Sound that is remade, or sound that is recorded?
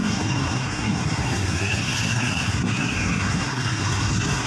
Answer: remade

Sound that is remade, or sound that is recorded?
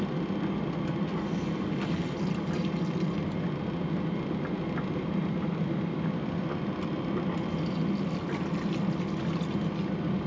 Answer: recorded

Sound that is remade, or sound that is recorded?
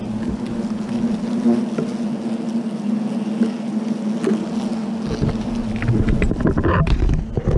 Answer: recorded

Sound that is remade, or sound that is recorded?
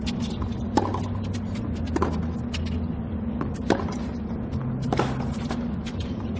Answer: recorded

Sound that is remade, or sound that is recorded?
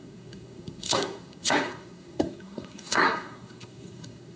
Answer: remade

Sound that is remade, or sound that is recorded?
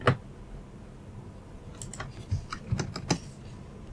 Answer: recorded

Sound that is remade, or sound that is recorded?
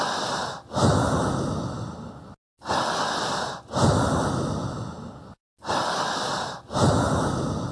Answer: recorded